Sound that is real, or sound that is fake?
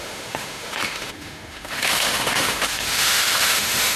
fake